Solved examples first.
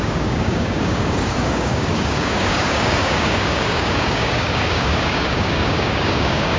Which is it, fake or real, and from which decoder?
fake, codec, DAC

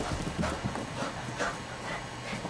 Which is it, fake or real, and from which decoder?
real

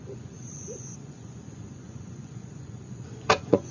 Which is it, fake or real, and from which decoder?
fake, vocoder, Vocos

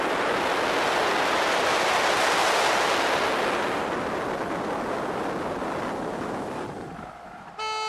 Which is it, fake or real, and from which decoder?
real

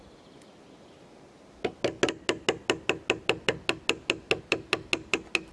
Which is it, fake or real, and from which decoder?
real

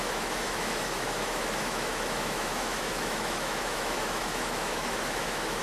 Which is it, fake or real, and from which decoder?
fake, autoencoder, DAC-VAE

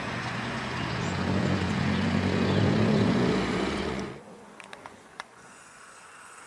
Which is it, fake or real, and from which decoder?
fake, vocoder, Vocos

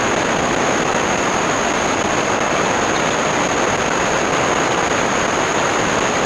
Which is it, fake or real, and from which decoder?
real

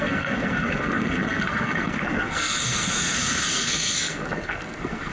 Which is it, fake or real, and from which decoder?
fake, codec, SNAC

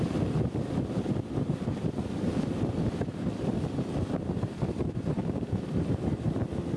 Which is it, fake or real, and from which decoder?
fake, vocoder, BigVGAN v2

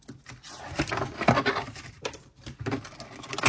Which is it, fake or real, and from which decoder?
real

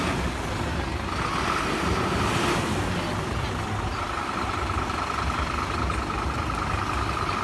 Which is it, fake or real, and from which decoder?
real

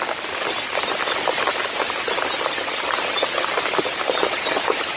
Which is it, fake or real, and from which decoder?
real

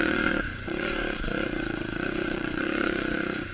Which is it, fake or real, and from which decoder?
fake, vocoder, Vocos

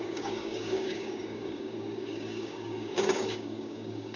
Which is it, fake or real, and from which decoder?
fake, codec, DAC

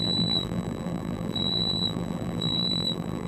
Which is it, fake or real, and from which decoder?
fake, vocoder, BigVGAN v2